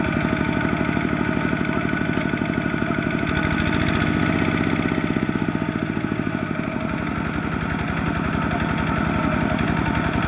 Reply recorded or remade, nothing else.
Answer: recorded